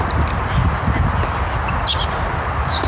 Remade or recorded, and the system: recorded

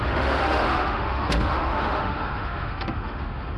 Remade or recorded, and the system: remade, autoencoder, DAC-VAE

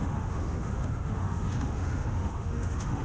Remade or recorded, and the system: remade, autoencoder, DAC-VAE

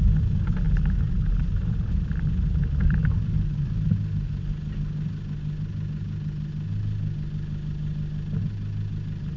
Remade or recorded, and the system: recorded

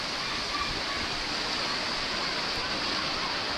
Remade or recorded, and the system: recorded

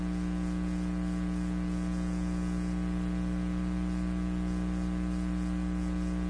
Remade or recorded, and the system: recorded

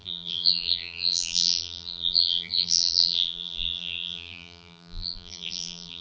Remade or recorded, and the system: remade, vocoder, BigVGAN v2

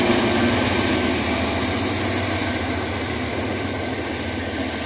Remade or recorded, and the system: recorded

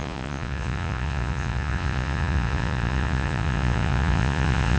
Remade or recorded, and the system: remade, vocoder, Vocos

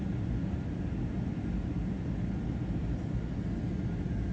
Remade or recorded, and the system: recorded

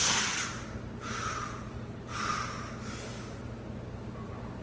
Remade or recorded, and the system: recorded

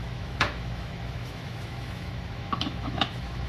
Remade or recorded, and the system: remade, autoencoder, DAC-VAE